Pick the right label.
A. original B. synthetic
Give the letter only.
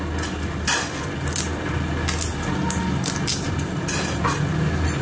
A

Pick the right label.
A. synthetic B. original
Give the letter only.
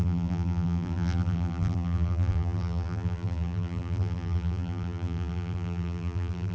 A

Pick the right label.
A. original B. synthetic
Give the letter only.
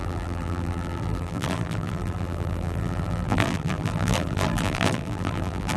B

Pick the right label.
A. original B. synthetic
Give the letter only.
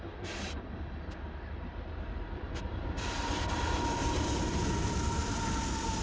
B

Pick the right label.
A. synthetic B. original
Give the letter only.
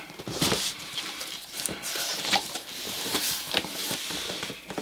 A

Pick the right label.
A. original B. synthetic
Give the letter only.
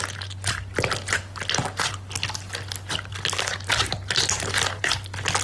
A